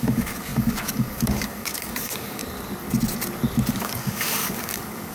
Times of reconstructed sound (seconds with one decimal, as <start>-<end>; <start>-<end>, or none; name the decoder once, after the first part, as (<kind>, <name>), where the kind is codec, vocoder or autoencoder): 0.0-2.4 (codec, DAC); 3.7-5.1